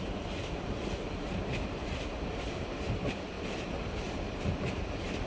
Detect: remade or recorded remade